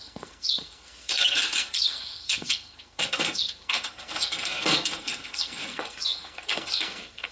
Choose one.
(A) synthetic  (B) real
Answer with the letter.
A